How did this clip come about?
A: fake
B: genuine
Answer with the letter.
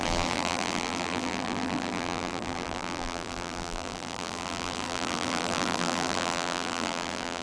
A